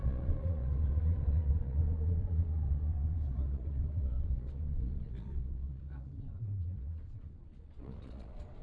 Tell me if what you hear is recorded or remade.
remade